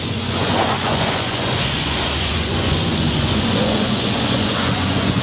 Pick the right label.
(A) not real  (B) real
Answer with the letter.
A